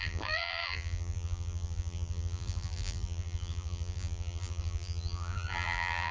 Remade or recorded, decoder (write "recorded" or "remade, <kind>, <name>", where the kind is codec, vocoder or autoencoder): remade, vocoder, BigVGAN v2